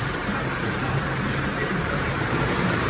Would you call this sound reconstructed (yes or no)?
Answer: yes